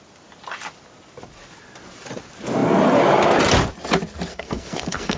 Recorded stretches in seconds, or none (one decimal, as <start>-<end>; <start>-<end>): 0.0-4.3